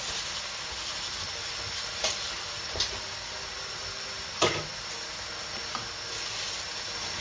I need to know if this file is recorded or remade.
recorded